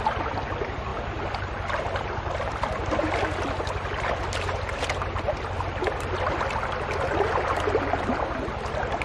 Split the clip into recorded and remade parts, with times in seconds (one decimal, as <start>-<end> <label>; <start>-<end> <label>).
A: 0.0-9.0 recorded

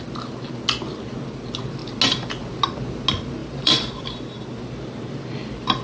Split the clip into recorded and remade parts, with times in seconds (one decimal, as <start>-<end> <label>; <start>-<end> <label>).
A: 0.0-3.4 recorded; 3.4-3.9 remade; 3.9-5.8 recorded